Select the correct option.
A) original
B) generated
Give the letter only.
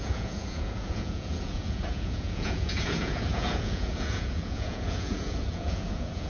B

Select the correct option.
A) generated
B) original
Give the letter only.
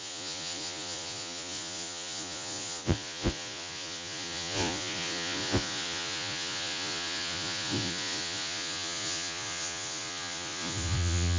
A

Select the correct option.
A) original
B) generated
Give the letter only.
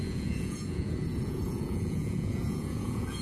B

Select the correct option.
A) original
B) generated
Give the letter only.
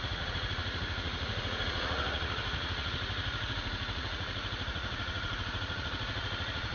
B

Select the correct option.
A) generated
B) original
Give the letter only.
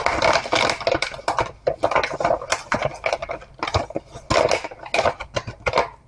B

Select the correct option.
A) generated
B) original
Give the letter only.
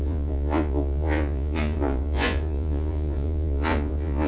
A